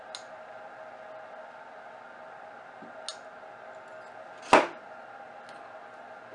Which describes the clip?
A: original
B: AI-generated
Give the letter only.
A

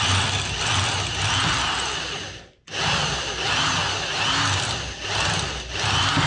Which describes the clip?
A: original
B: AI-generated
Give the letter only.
A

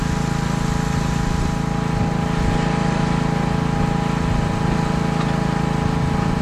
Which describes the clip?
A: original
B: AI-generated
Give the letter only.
A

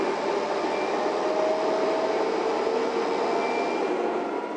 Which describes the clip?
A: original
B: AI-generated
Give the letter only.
A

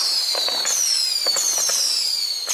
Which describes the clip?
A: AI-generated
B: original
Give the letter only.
B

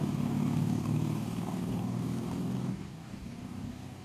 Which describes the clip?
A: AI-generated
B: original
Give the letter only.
A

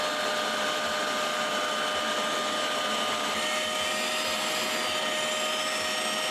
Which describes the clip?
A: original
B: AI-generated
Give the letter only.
A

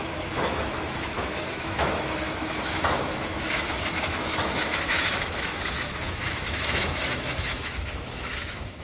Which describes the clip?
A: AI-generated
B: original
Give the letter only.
A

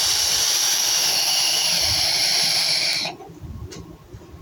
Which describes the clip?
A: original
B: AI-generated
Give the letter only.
A